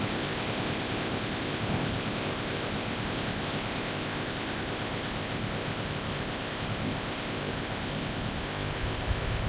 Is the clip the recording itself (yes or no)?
no